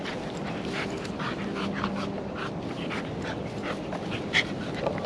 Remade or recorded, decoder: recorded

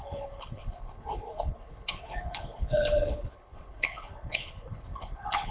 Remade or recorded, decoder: remade, codec, HILCodec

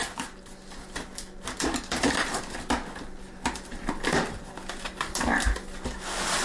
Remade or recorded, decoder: recorded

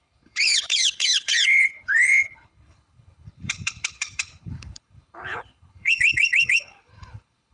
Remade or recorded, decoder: remade, codec, HILCodec